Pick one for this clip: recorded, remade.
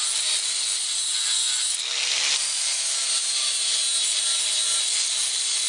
recorded